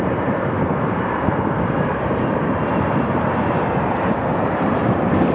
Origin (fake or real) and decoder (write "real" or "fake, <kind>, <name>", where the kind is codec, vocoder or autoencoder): fake, vocoder, BigVGAN v2